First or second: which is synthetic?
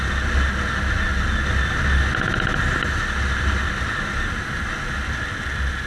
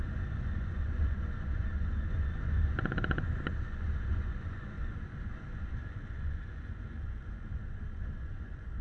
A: second